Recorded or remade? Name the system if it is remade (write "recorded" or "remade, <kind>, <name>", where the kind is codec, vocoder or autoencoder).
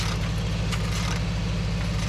recorded